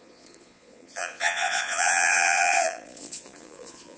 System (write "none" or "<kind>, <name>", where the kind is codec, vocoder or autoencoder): vocoder, Vocos